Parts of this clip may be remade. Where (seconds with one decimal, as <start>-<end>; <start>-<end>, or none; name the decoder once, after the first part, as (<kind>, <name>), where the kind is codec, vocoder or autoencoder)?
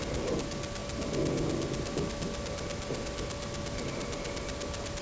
none